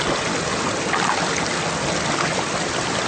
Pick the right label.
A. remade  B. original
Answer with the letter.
B